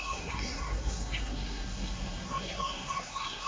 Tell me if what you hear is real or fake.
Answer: fake